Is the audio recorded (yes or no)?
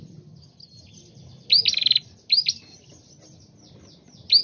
yes